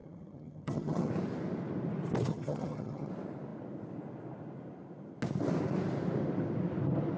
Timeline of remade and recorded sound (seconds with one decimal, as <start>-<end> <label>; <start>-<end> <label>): 0.0-1.1 remade; 1.1-2.3 recorded; 2.3-3.1 remade; 3.1-7.2 recorded